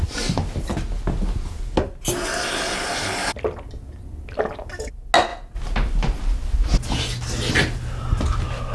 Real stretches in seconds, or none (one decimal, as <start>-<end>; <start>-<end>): 0.0-8.7